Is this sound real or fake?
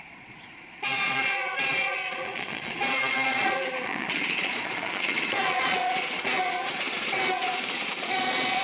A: fake